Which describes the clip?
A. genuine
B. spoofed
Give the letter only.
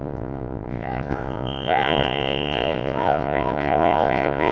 B